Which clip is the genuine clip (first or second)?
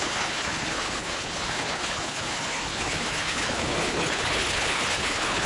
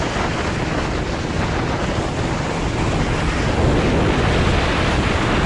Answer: second